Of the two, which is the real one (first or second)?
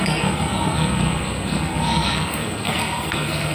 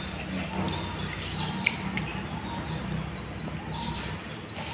second